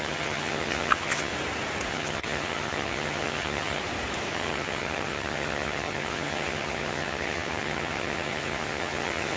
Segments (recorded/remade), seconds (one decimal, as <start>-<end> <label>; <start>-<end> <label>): 0.0-1.3 remade; 1.3-1.9 recorded; 1.9-3.8 remade; 3.8-4.3 recorded; 4.3-9.4 remade